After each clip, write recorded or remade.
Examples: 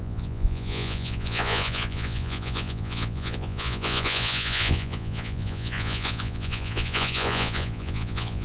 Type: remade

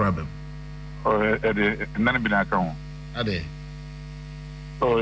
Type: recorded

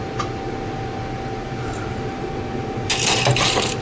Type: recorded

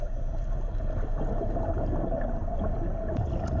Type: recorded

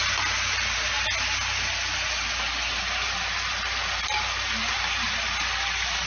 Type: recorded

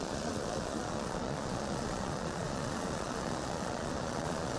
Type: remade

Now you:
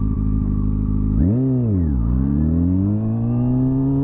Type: recorded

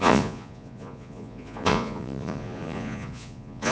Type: remade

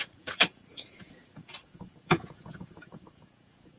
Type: remade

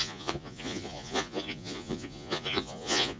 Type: remade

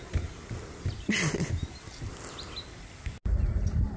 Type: recorded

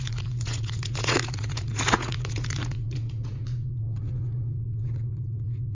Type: remade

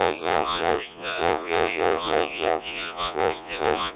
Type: remade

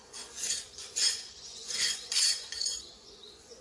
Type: remade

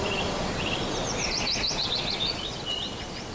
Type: remade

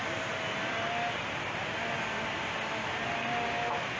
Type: recorded